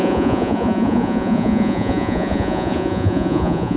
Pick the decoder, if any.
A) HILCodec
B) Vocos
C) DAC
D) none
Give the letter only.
B